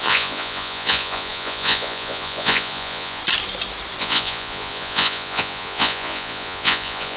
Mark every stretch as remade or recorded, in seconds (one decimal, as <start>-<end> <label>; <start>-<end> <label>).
0.0-3.2 remade; 3.2-4.0 recorded; 4.0-7.2 remade